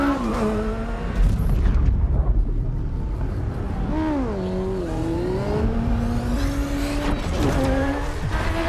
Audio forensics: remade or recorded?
recorded